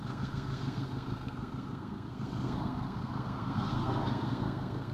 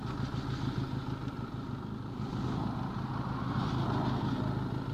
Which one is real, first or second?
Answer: second